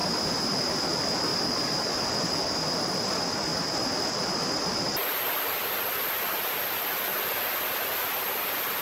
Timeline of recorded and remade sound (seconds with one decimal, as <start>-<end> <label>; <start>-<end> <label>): 0.0-1.3 recorded; 1.3-1.9 remade; 1.9-8.8 recorded